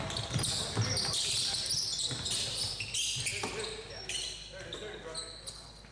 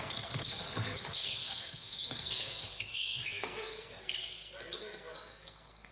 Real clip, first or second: first